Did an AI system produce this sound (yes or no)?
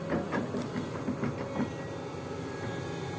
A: no